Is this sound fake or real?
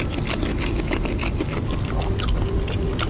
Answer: real